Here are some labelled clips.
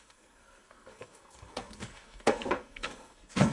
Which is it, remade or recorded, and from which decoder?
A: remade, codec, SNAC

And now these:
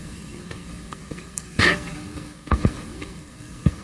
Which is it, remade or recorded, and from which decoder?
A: remade, codec, SNAC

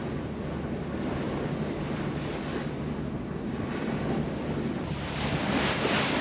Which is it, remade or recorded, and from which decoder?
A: recorded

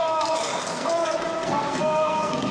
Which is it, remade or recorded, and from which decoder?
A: remade, codec, SNAC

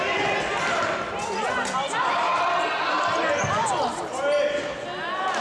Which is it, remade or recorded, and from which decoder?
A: recorded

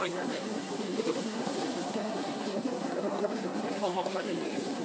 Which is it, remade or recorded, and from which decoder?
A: remade, codec, SNAC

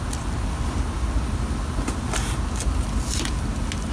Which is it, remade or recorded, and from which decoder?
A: recorded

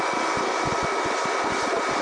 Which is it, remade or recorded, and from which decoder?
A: recorded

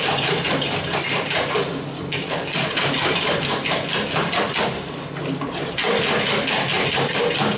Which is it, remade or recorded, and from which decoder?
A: recorded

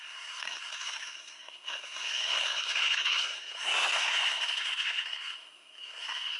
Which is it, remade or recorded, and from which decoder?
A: remade, codec, SNAC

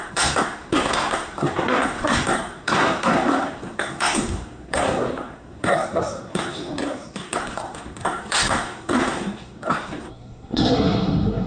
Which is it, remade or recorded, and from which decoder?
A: remade, codec, SNAC